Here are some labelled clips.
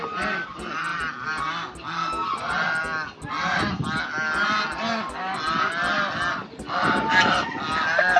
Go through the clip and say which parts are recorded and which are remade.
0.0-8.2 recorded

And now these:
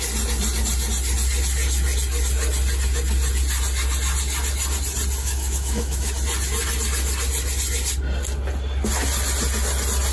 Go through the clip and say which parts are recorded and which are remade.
0.0-5.2 recorded; 5.2-6.1 remade; 6.1-10.1 recorded

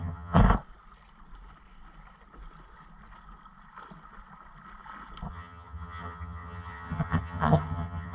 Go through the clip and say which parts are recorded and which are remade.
0.0-0.4 remade; 0.4-5.3 recorded; 5.3-8.1 remade

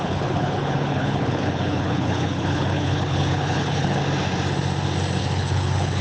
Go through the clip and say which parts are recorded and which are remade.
0.0-4.0 remade; 4.0-5.2 recorded; 5.2-6.0 remade

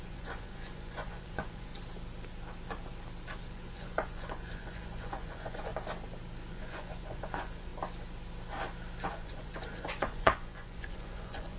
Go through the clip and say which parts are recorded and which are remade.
0.0-1.7 remade; 1.7-3.4 recorded; 3.4-5.7 remade; 5.7-6.5 recorded; 6.5-7.7 remade; 7.7-9.1 recorded; 9.1-11.6 remade

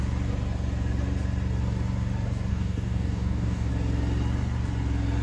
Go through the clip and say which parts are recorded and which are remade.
0.0-2.5 recorded; 2.5-3.7 remade; 3.7-5.2 recorded

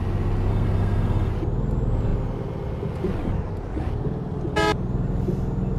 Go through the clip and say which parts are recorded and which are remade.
0.0-0.5 recorded; 0.5-1.3 remade; 1.3-5.8 recorded

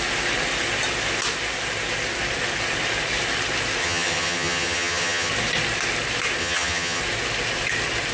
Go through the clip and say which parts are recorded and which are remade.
0.0-3.8 recorded; 3.8-5.3 remade; 5.3-6.4 recorded; 6.4-7.0 remade; 7.0-8.1 recorded